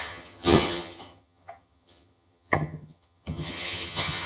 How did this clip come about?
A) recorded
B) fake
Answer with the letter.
B